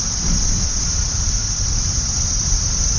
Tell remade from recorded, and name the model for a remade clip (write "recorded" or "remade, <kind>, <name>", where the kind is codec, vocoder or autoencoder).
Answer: recorded